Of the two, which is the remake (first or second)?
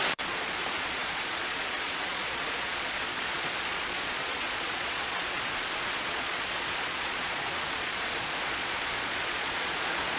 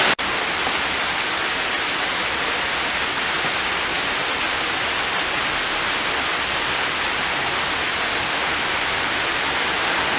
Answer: first